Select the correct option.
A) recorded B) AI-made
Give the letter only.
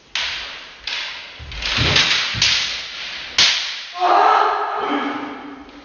A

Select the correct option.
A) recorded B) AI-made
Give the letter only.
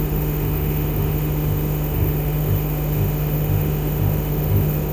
B